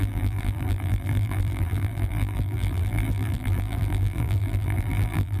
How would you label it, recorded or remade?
remade